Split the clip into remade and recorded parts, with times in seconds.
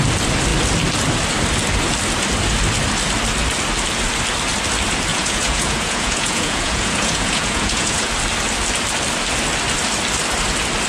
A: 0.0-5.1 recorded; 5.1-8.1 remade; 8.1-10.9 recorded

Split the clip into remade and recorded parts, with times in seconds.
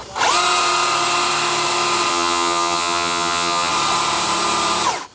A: 0.0-2.1 recorded; 2.1-3.7 remade; 3.7-5.1 recorded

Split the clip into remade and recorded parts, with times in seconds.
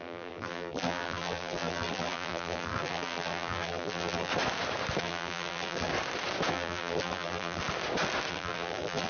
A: 0.0-4.3 remade; 4.3-5.0 recorded; 5.0-5.9 remade; 5.9-6.5 recorded; 6.5-7.6 remade; 7.6-8.3 recorded; 8.3-9.1 remade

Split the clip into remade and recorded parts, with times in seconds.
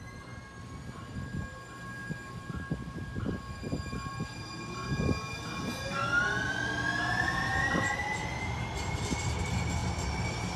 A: 0.0-2.0 recorded; 2.0-2.7 remade; 2.7-10.6 recorded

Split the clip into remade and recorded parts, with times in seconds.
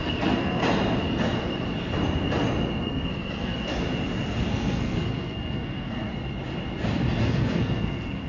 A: 0.0-0.6 remade; 0.6-2.8 recorded; 2.8-3.7 remade; 3.7-4.5 recorded; 4.5-6.1 remade; 6.1-7.2 recorded; 7.2-8.3 remade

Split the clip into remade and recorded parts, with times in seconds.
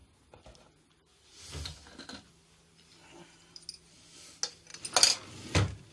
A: 0.0-5.9 recorded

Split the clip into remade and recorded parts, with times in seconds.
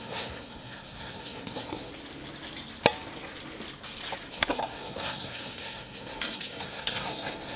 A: 0.0-1.9 remade; 1.9-4.3 recorded; 4.3-7.6 remade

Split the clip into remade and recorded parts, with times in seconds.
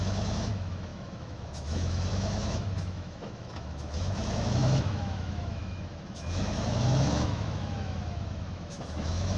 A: 0.0-9.4 remade